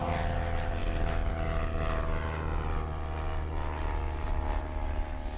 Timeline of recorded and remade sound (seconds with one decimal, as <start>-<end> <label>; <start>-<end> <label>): 0.0-5.4 recorded